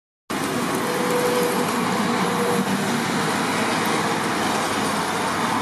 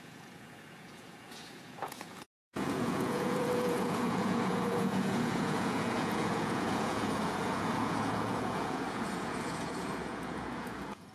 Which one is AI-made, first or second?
second